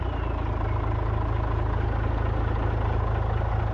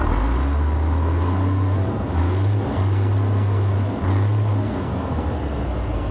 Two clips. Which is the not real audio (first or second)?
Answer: second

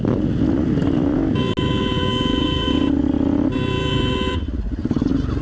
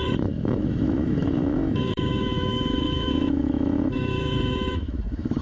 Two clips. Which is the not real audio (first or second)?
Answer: second